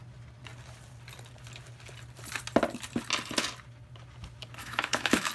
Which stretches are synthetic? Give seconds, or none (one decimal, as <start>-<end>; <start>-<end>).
4.6-5.3